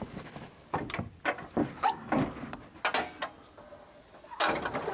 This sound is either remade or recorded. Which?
recorded